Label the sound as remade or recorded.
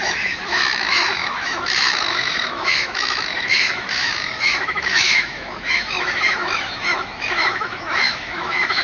remade